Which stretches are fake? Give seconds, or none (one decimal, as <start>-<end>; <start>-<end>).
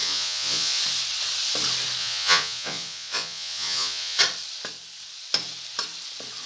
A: 0.0-0.8; 2.0-4.2